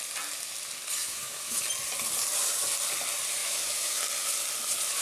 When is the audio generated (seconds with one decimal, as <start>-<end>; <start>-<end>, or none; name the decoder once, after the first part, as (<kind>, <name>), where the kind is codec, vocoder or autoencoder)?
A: 1.0-1.6 (autoencoder, DAC-VAE); 3.4-4.0